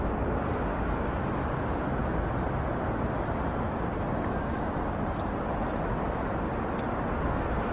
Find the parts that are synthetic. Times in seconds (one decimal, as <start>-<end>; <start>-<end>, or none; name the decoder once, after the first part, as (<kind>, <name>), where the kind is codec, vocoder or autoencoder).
none